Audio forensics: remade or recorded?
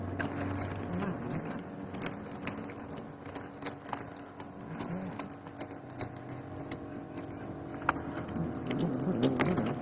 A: recorded